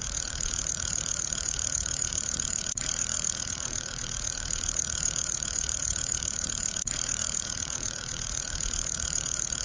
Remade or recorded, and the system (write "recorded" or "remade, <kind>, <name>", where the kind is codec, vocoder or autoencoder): remade, vocoder, Vocos